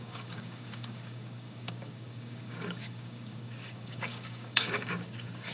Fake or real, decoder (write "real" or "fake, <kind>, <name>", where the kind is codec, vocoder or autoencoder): fake, codec, DAC